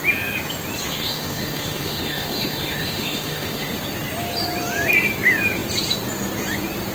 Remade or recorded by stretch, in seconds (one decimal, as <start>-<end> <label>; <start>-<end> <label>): 0.0-0.9 recorded; 0.9-3.7 remade; 3.7-6.9 recorded